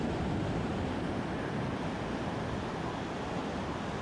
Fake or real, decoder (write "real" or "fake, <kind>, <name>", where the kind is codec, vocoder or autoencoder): real